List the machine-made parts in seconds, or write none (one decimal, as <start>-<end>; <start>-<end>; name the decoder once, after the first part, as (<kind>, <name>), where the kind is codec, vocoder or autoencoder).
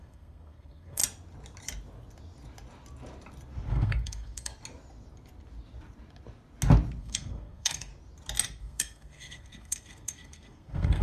0.0-1.0 (codec, SNAC); 3.7-4.5; 7.0-7.9; 8.6-11.0